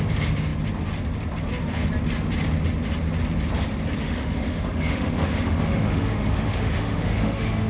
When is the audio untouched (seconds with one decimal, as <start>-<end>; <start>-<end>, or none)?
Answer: 0.0-4.0